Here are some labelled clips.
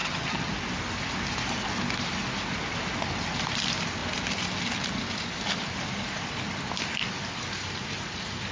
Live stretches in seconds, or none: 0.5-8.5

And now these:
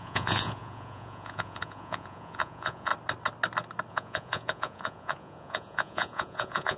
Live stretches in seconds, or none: 2.9-3.9